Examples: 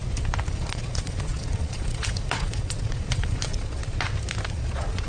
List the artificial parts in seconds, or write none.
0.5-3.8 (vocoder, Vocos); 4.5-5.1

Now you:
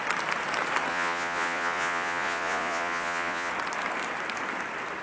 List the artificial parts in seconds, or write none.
0.9-3.5 (vocoder, Vocos)

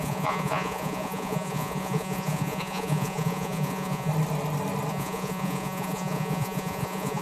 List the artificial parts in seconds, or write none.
0.0-4.1 (vocoder, Vocos); 4.9-7.2

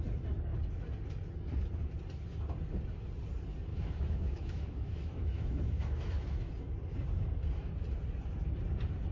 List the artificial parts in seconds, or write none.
3.7-6.5 (autoencoder, DAC-VAE)